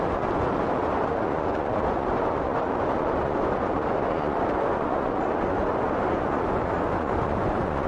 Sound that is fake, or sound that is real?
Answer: fake